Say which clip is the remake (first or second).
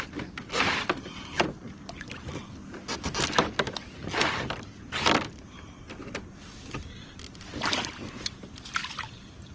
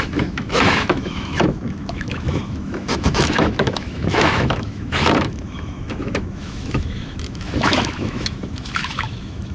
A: second